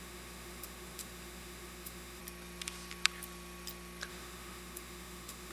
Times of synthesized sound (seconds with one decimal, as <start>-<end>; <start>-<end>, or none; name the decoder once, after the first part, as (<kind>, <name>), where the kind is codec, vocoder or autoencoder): 0.0-2.2 (autoencoder, DAC-VAE); 4.1-5.5